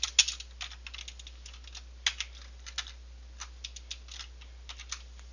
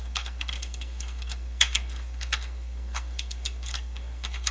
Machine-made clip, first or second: second